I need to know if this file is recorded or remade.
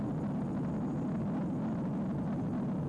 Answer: recorded